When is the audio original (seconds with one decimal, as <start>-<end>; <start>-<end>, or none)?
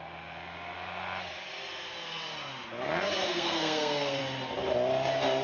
0.0-3.2; 4.2-5.4